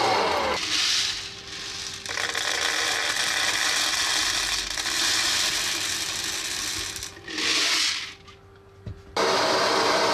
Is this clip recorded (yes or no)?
yes